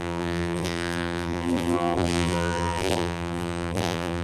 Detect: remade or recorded remade